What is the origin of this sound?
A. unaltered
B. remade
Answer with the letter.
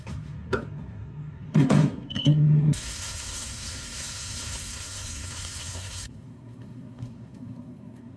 B